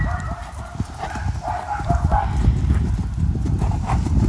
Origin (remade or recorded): recorded